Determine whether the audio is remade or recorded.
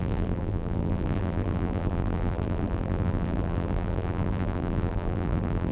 remade